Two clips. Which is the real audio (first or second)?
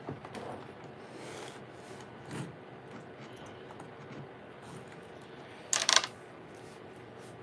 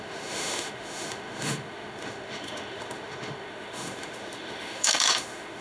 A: first